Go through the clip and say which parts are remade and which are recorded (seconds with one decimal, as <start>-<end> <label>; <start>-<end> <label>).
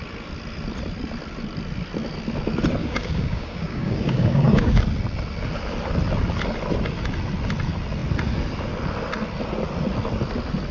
0.0-2.8 recorded; 2.8-4.8 remade; 4.8-10.7 recorded